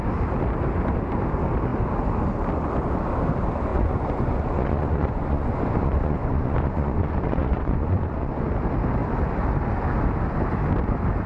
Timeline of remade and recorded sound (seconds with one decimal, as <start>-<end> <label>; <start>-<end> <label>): 0.0-3.7 recorded; 3.7-8.5 remade; 8.5-11.3 recorded

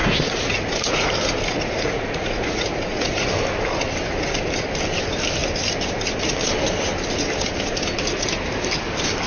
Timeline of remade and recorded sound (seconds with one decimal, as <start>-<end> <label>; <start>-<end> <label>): 0.0-1.1 remade; 1.1-1.5 recorded; 1.5-3.3 remade; 3.3-9.3 recorded